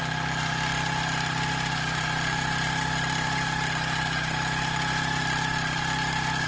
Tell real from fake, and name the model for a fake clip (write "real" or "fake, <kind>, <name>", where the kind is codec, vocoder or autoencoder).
real